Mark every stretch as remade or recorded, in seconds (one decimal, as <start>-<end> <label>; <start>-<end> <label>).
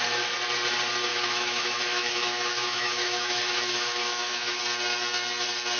0.0-1.1 recorded; 1.1-4.6 remade; 4.6-5.8 recorded